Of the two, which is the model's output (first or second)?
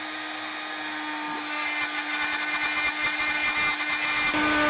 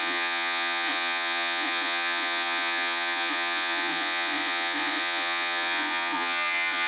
second